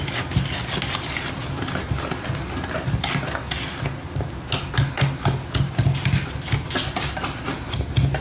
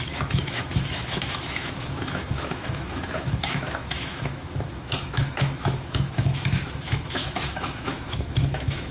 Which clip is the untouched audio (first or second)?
first